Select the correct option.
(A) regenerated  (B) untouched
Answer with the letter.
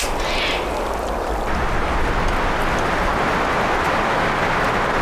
B